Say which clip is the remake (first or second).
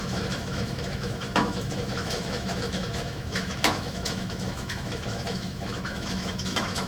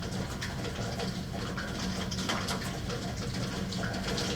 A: first